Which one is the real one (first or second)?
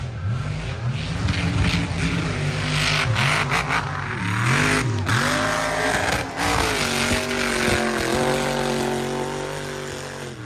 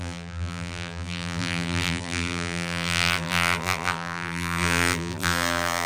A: first